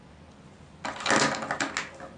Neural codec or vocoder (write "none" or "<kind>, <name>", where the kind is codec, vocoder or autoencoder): none